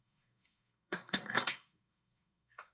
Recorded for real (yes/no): no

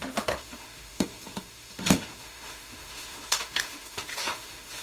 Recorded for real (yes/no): no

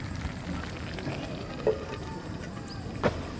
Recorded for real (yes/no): yes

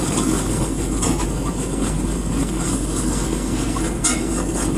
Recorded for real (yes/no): no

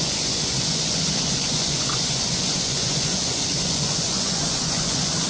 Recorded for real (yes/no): no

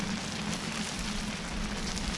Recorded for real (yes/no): yes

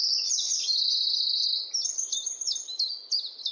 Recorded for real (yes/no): yes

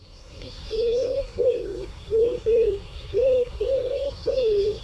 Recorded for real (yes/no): no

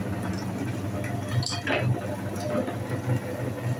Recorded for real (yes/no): yes